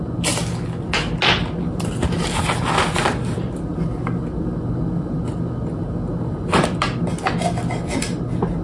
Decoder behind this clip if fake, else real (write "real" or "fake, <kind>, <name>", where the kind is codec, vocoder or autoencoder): real